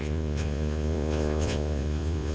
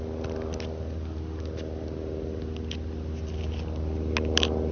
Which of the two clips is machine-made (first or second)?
first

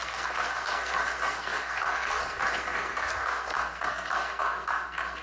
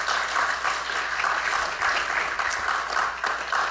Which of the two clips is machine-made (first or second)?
first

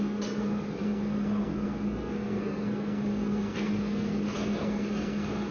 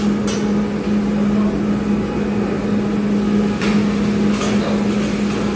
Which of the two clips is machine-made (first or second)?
first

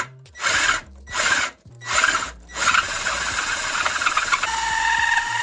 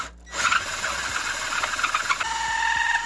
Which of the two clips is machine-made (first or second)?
first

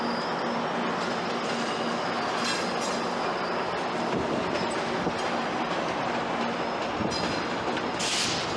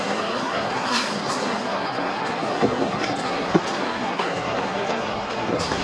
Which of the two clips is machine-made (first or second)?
second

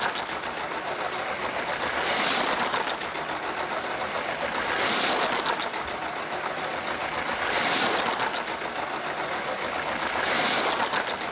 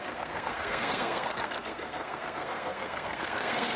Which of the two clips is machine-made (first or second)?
second